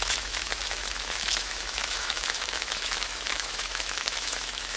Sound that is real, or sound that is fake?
fake